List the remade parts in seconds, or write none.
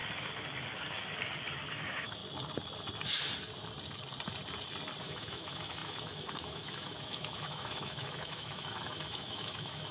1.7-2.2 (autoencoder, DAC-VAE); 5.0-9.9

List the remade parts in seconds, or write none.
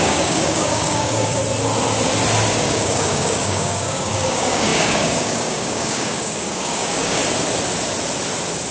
0.0-1.4 (codec, DAC); 2.5-7.2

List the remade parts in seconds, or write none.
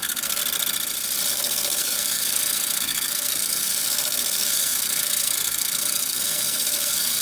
0.0-0.4 (codec, SNAC); 1.3-7.2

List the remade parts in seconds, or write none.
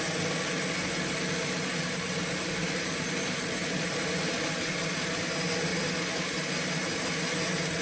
3.6-5.3 (vocoder, BigVGAN v2); 5.7-6.5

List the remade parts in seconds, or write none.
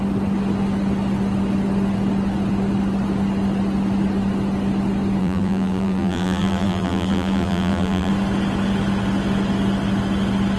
5.2-8.1 (vocoder, BigVGAN v2)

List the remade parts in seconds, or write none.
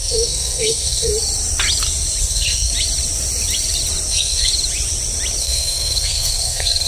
0.0-1.1 (codec, SNAC); 2.2-2.7; 4.1-4.5; 5.4-6.9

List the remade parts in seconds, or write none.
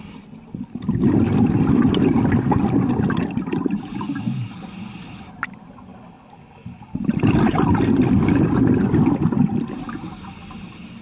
none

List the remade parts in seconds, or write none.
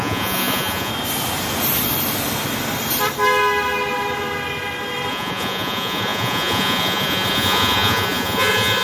0.0-0.9 (vocoder, Vocos); 5.1-8.8